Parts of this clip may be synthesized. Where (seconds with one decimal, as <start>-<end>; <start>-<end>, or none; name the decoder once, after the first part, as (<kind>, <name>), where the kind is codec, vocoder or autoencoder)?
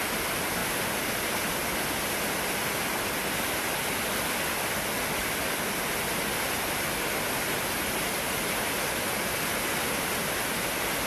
none